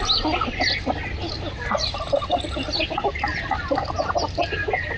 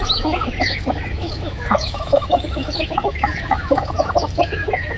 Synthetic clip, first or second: second